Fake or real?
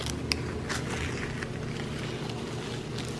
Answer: real